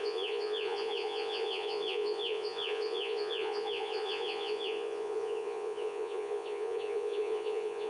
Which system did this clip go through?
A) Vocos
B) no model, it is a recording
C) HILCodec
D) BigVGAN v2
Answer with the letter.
A